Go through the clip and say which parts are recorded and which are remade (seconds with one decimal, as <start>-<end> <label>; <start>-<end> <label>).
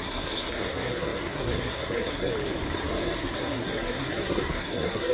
0.0-2.3 remade; 2.3-2.8 recorded; 2.8-5.1 remade